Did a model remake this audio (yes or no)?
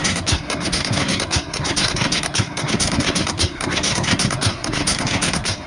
yes